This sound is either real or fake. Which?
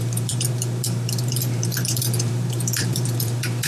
fake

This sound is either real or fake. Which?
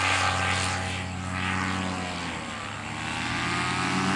real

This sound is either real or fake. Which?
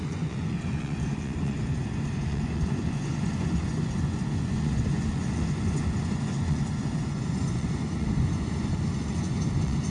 fake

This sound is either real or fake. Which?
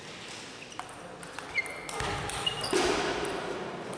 real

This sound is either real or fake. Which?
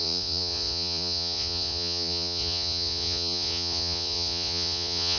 fake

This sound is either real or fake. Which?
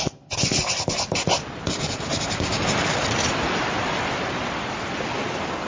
real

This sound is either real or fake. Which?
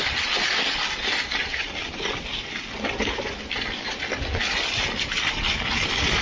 real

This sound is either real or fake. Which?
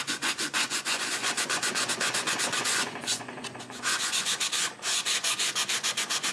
fake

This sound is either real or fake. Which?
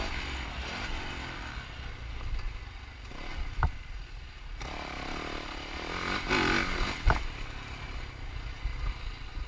real